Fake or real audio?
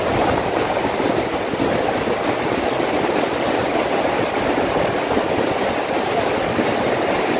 real